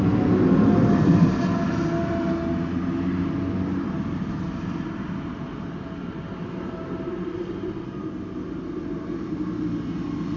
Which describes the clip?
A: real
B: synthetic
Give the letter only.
A